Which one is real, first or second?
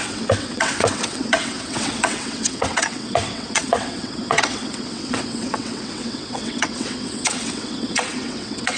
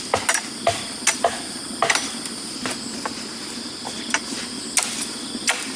second